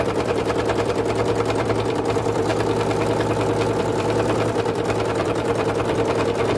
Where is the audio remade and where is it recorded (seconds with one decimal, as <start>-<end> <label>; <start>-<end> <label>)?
0.0-2.5 remade; 2.5-3.8 recorded; 3.8-6.6 remade